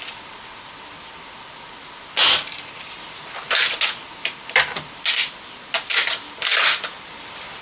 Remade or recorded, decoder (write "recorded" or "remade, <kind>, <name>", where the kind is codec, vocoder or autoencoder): recorded